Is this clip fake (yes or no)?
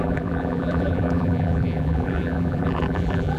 yes